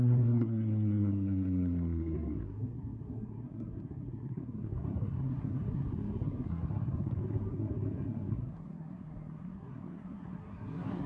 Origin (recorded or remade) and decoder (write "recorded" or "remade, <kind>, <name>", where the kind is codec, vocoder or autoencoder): remade, codec, SNAC